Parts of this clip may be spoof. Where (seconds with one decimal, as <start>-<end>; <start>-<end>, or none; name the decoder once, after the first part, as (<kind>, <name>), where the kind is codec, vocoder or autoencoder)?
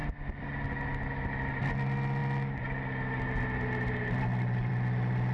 none